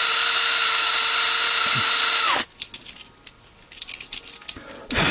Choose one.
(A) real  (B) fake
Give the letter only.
A